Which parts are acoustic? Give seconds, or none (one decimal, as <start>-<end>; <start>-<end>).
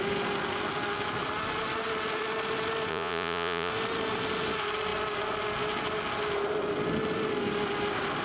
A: 0.0-2.9; 3.7-8.2